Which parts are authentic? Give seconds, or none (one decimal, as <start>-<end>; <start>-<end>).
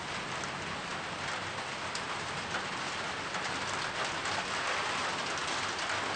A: 0.0-6.2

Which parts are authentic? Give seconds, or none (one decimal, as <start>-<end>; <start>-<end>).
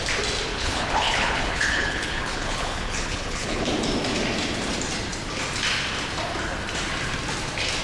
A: 0.0-0.5; 3.7-7.8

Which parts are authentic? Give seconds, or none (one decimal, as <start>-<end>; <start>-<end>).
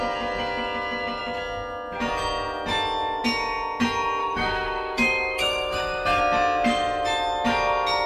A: 0.0-4.2; 6.2-8.1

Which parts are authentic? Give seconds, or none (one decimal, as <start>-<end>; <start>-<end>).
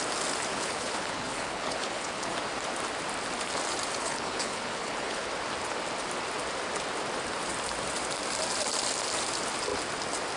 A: 0.0-0.5; 2.3-4.0; 5.3-10.4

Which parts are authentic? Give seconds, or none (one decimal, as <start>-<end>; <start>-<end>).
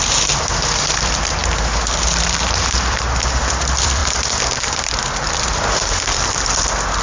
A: 1.4-1.9; 4.0-5.3